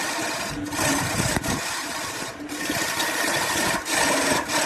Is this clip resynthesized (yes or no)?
yes